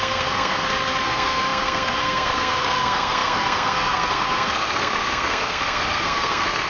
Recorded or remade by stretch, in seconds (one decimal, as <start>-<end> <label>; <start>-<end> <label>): 0.0-6.7 remade